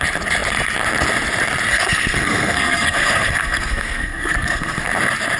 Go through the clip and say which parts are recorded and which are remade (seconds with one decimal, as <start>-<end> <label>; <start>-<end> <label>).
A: 0.0-1.7 recorded; 1.7-4.9 remade; 4.9-5.4 recorded